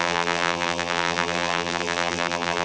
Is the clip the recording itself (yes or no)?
no